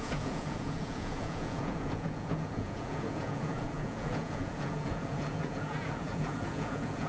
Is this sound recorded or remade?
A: remade